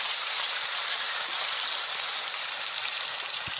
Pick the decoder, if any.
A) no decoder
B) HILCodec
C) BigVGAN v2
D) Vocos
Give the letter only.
C